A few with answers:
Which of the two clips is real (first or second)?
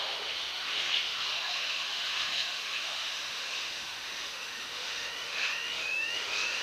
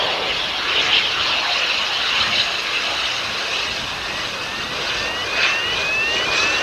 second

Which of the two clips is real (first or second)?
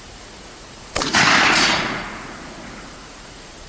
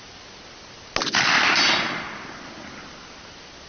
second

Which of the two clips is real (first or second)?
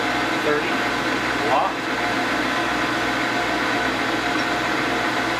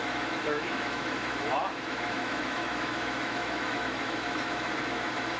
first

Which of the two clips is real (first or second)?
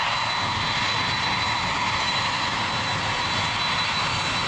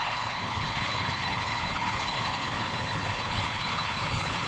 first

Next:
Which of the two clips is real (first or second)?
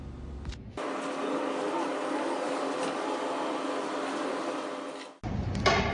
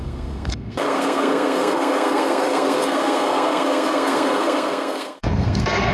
first